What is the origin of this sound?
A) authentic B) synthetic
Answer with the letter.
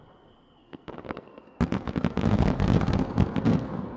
B